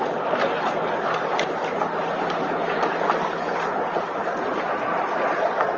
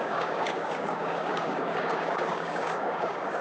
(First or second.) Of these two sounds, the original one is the first